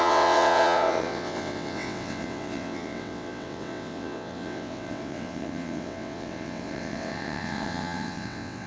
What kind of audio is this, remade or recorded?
remade